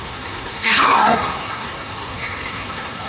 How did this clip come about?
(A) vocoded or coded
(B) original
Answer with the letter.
A